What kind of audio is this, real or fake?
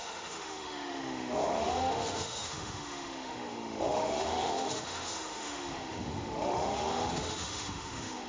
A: fake